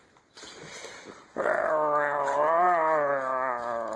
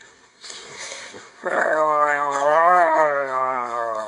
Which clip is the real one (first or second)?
first